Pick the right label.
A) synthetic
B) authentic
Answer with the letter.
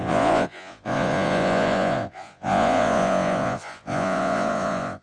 A